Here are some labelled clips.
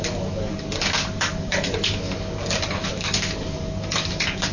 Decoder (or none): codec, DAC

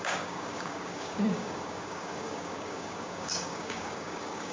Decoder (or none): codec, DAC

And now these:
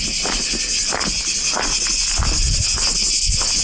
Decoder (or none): none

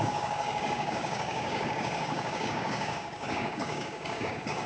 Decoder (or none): codec, DAC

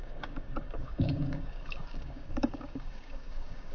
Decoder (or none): codec, DAC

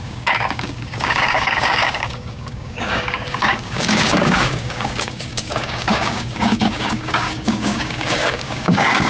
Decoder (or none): codec, DAC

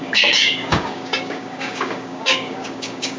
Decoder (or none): codec, DAC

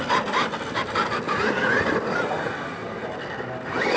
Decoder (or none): none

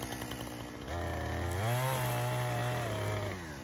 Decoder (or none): none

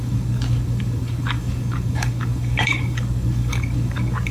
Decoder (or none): codec, DAC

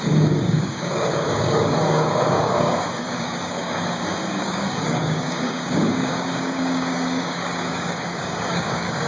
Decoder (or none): codec, DAC